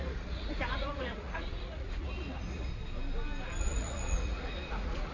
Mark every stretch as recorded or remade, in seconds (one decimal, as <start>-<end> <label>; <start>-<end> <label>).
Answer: 0.0-2.7 remade; 2.7-3.6 recorded; 3.6-5.1 remade